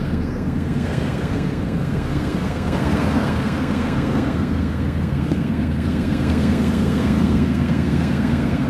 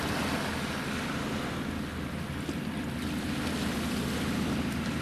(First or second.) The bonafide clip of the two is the second